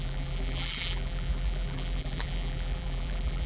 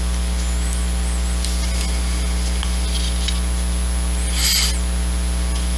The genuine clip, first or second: second